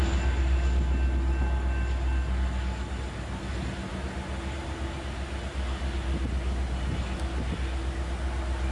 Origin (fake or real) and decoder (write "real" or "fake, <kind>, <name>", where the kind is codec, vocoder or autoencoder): real